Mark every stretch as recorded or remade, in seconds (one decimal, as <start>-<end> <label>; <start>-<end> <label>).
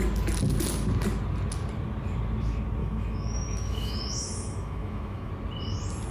0.0-2.8 recorded; 2.8-5.3 remade; 5.3-6.1 recorded